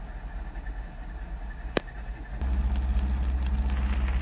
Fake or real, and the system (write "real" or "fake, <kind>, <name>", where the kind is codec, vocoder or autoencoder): real